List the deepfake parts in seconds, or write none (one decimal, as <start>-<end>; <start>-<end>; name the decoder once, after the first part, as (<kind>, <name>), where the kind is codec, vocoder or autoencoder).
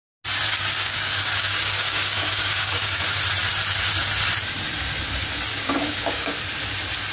0.5-3.0 (codec, DAC); 5.5-6.3